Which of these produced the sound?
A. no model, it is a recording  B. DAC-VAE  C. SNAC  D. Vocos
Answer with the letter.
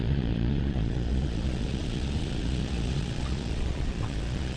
D